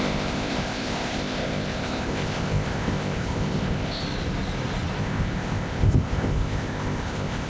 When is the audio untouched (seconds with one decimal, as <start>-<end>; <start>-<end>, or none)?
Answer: 4.0-5.0